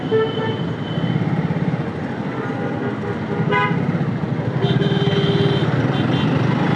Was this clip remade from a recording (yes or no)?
no